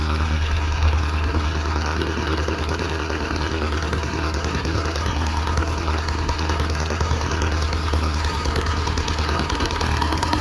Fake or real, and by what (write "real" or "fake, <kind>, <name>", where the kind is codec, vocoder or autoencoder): fake, codec, SNAC